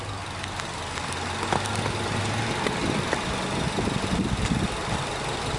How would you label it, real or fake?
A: real